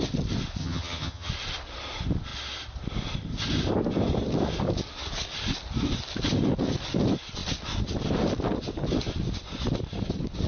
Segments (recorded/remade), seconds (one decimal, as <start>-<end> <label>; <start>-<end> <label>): 0.0-0.6 recorded; 0.6-1.3 remade; 1.3-10.5 recorded